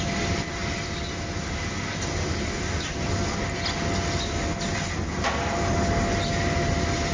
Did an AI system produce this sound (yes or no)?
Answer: no